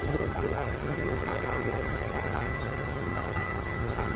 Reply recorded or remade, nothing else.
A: remade